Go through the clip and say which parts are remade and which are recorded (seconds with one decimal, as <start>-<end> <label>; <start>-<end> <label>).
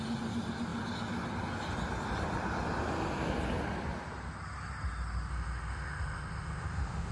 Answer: 0.0-5.3 recorded; 5.3-7.1 remade